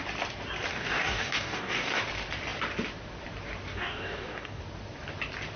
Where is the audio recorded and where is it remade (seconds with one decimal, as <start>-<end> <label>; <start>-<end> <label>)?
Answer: 0.0-0.7 recorded; 0.7-2.0 remade; 2.0-3.7 recorded; 3.7-4.6 remade; 4.6-5.6 recorded